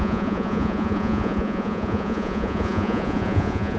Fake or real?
fake